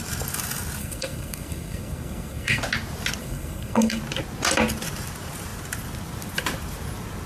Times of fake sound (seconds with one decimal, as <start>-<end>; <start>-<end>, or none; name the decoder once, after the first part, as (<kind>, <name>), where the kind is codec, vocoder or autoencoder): 0.8-2.6 (codec, SNAC); 3.2-4.0